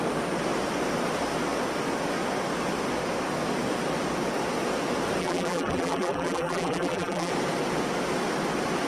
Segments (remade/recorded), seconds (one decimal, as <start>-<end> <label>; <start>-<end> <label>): 0.0-5.2 recorded; 5.2-7.3 remade; 7.3-8.9 recorded